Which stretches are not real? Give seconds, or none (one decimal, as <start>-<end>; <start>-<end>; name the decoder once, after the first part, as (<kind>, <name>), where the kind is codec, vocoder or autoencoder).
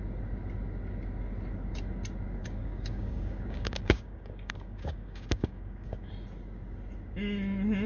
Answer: 2.4-6.1 (codec, DAC)